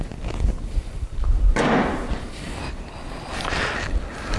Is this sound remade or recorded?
recorded